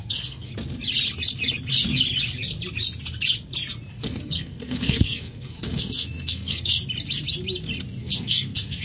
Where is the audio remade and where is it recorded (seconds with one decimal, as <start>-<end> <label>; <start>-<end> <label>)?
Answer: 0.0-0.5 remade; 0.5-3.9 recorded; 3.9-6.8 remade; 6.8-8.0 recorded; 8.0-8.8 remade